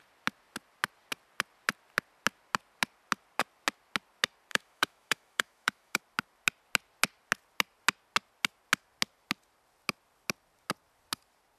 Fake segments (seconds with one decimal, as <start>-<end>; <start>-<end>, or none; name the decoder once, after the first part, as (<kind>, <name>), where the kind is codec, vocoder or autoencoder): 4.5-6.0 (autoencoder, DAC-VAE)